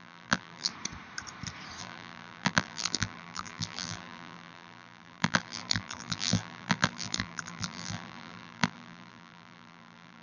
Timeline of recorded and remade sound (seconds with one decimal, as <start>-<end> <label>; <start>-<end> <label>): 0.0-0.7 remade; 0.7-1.8 recorded; 1.8-10.2 remade